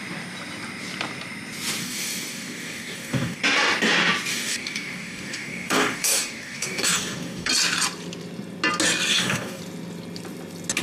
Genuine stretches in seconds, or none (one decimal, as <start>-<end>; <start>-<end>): 0.0-1.8; 3.4-4.3; 7.5-9.1; 9.6-10.8